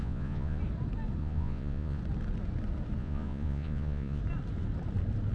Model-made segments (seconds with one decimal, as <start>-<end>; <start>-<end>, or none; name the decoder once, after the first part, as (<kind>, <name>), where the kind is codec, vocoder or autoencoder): 0.0-0.6 (vocoder, Vocos); 1.2-2.0; 3.0-4.2